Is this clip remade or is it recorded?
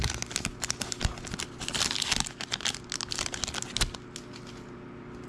recorded